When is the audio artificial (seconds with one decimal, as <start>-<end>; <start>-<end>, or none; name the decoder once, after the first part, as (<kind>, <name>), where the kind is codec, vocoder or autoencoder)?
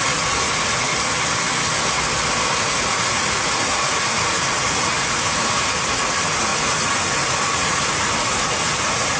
0.0-0.9 (vocoder, Vocos); 2.6-9.2